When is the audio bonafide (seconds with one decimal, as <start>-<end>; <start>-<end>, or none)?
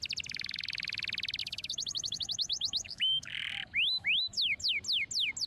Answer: 0.0-1.4; 4.7-5.5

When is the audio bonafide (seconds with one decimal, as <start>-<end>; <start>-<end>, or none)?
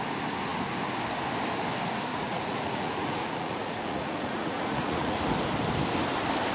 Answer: 0.0-2.1; 5.2-6.5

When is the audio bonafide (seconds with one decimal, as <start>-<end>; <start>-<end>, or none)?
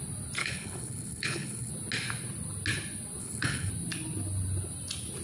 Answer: 0.0-0.4; 1.7-3.2; 3.7-5.2